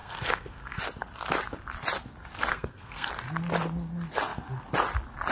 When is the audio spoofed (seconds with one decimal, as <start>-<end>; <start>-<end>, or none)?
0.0-0.8; 2.5-3.1